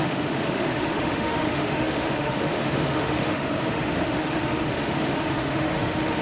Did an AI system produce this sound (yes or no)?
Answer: yes